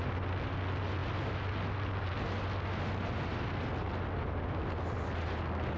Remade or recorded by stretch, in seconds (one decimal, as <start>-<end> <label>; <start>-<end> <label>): 0.0-5.8 recorded